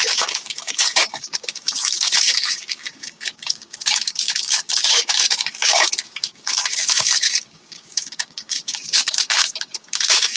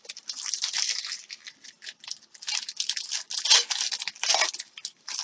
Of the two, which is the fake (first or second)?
first